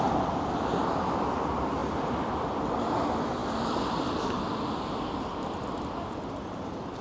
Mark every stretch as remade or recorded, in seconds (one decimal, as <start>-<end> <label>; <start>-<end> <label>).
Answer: 0.0-7.0 recorded